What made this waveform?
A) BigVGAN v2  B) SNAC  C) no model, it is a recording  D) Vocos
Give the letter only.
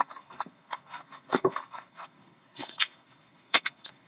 B